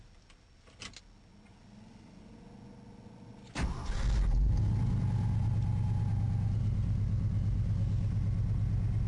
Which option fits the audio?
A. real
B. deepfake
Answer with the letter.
A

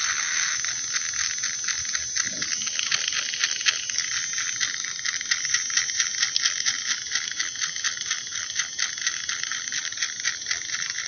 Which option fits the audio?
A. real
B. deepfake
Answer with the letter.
A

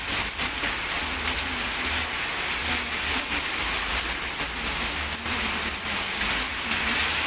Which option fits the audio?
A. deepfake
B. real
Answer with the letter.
B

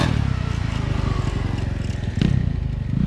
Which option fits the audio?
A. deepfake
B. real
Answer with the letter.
B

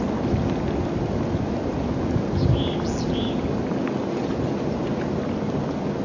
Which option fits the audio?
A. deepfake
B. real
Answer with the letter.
B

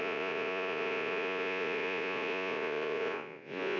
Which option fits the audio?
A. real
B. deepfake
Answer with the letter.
B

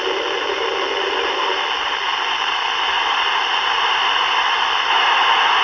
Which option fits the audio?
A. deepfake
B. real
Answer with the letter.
B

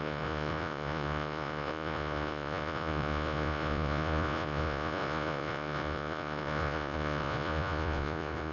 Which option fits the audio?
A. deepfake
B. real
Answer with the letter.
A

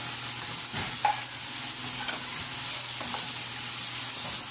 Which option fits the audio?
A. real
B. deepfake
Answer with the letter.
A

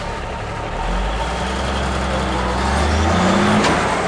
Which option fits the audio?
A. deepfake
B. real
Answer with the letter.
B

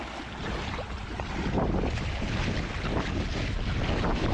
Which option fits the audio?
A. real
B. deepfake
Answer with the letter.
A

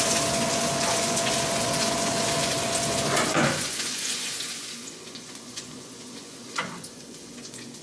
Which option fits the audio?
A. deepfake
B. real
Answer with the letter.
A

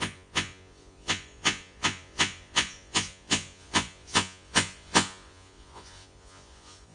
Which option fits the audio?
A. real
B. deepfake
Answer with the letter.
B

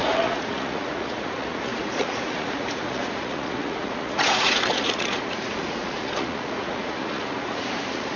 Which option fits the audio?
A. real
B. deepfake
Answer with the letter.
B